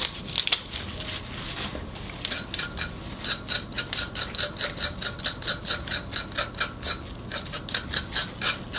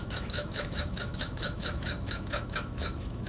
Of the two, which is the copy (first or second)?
second